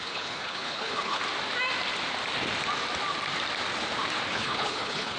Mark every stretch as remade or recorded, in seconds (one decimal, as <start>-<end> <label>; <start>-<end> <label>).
0.0-1.2 remade; 1.2-4.3 recorded; 4.3-5.2 remade